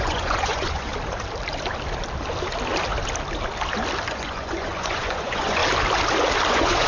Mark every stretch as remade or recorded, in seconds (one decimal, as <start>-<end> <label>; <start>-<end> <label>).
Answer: 0.0-0.9 remade; 0.9-4.1 recorded; 4.1-5.6 remade; 5.6-6.5 recorded; 6.5-6.9 remade